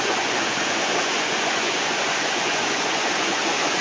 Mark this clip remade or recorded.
remade